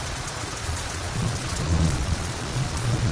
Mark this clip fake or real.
fake